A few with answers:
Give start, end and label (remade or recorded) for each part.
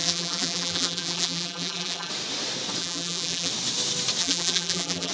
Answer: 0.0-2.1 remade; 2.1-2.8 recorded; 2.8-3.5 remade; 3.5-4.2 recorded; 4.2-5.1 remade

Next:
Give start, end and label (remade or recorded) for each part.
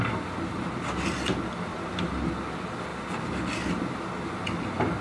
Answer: 0.0-1.7 recorded; 1.7-2.3 remade; 2.3-5.0 recorded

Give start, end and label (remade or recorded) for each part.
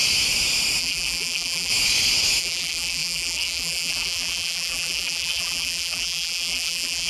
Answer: 0.0-0.8 recorded; 0.8-1.7 remade; 1.7-2.4 recorded; 2.4-7.1 remade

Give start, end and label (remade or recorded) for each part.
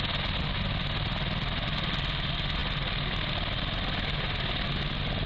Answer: 0.0-5.3 recorded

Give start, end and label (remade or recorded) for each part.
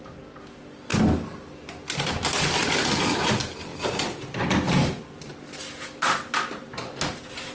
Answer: 0.0-0.9 recorded; 0.9-2.8 remade; 2.8-3.7 recorded; 3.7-4.4 remade; 4.4-7.5 recorded